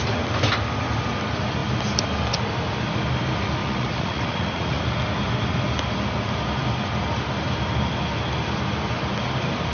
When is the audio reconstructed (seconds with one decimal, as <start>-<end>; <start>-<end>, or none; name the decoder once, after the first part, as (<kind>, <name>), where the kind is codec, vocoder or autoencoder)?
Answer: 3.6-4.8 (vocoder, Vocos)